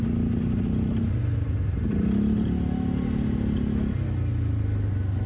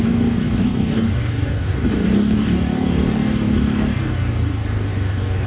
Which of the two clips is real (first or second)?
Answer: first